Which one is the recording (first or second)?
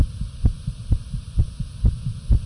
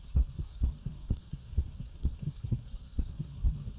first